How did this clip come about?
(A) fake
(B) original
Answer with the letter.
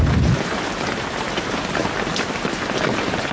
B